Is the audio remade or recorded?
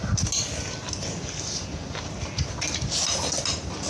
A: recorded